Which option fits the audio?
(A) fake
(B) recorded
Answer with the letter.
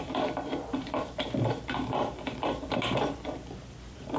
A